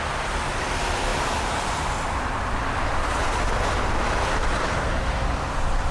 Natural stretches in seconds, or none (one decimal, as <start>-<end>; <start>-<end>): 0.0-5.9